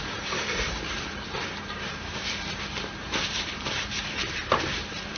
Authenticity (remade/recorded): remade